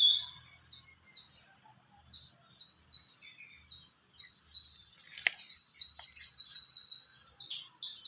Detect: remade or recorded recorded